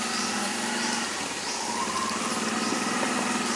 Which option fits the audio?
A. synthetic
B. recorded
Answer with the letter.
B